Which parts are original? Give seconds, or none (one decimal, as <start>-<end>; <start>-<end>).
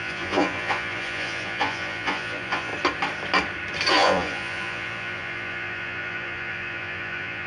2.7-3.9